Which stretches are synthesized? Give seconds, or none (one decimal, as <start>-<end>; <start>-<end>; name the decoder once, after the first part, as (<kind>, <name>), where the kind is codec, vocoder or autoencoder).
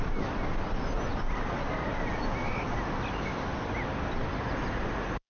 none